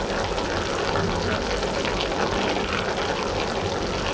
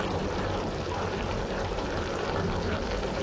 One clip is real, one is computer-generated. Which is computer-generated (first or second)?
second